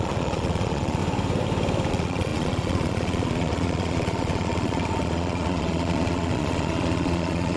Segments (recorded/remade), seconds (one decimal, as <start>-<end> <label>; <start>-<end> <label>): 0.0-1.0 remade; 1.0-1.9 recorded; 1.9-7.6 remade